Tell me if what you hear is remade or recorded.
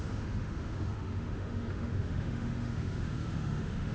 remade